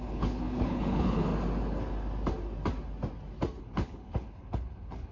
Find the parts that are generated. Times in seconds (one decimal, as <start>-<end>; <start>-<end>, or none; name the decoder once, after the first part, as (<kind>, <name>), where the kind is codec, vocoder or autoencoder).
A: 0.0-1.3 (codec, HILCodec); 3.6-5.1

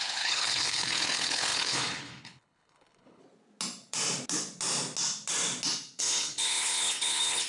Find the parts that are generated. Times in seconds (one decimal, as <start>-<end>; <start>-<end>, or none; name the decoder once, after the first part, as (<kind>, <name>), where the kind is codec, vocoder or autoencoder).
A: 0.0-3.2 (codec, HILCodec); 6.0-7.5

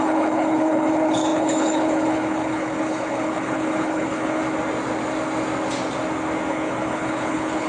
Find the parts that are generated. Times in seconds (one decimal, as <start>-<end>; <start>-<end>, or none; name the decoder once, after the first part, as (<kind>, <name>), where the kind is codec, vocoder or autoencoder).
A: 0.0-4.4 (codec, HILCodec); 6.5-7.7

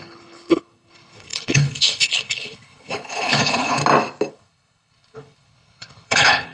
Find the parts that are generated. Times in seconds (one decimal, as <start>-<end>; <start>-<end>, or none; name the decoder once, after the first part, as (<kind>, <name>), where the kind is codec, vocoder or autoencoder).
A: 0.0-3.8 (codec, HILCodec); 4.3-6.5

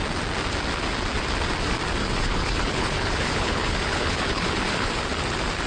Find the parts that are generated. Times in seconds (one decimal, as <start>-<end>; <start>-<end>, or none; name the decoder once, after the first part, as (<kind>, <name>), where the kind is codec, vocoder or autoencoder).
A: 2.0-4.9 (codec, HILCodec)